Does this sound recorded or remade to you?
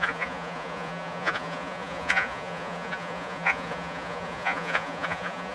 remade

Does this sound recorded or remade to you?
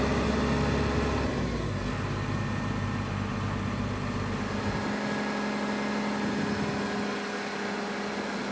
recorded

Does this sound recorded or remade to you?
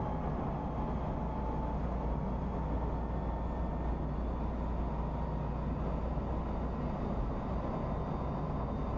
recorded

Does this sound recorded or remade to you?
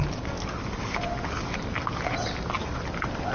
recorded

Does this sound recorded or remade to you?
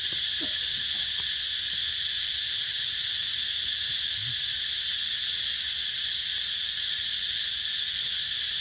recorded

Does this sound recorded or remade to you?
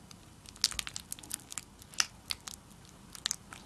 recorded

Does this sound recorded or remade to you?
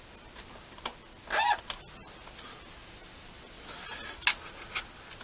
recorded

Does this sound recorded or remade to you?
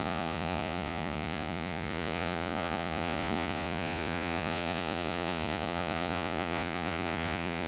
remade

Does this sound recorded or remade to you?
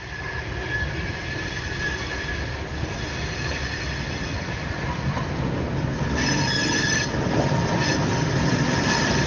recorded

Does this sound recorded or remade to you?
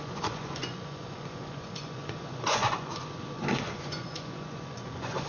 remade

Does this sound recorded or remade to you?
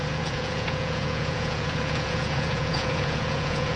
remade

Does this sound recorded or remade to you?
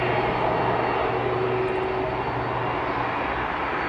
recorded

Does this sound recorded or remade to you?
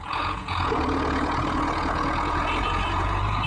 remade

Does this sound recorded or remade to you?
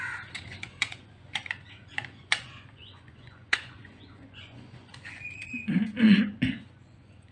remade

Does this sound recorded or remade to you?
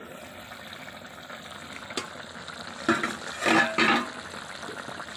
recorded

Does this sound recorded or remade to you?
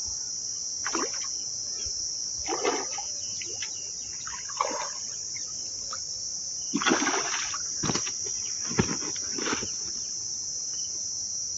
recorded